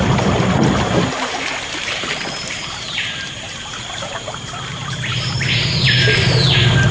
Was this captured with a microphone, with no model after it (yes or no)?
no